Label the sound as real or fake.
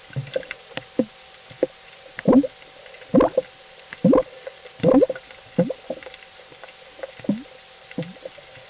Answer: real